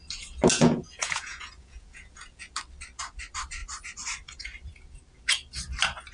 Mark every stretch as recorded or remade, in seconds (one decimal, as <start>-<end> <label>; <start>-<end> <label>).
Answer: 0.0-0.5 recorded; 0.5-2.5 remade; 2.5-6.1 recorded